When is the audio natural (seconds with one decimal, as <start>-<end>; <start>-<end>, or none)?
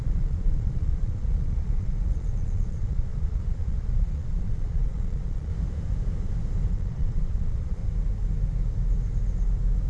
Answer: 5.5-6.7; 7.8-9.9